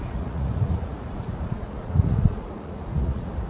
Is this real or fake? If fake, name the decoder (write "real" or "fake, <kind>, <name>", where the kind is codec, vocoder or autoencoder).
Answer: fake, vocoder, Vocos